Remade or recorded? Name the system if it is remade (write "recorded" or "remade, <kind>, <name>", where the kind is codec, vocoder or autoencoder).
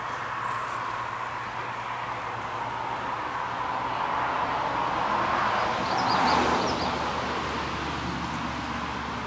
recorded